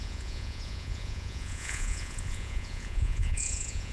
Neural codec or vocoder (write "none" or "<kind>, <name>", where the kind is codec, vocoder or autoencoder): vocoder, Vocos